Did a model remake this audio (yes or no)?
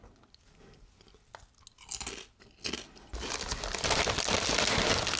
no